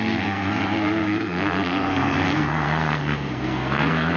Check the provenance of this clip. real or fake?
fake